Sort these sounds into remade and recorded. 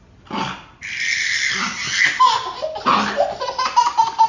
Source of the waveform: recorded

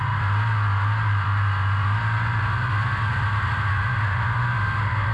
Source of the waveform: recorded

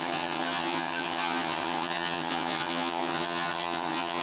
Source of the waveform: remade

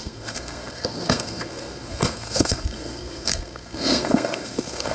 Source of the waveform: remade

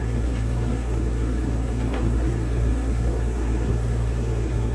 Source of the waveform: remade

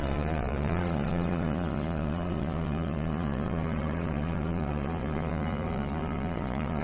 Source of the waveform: remade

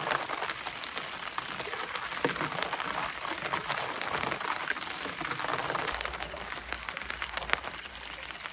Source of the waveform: recorded